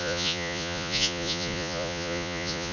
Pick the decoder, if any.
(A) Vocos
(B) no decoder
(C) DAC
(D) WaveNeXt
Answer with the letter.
A